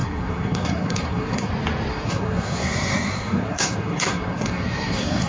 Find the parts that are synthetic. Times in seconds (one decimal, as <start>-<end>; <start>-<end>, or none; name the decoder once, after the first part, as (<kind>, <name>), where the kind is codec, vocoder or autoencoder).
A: 0.0-1.5 (codec, SNAC); 1.9-5.3